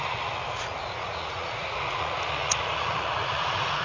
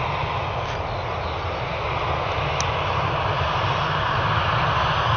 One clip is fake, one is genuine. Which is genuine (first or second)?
second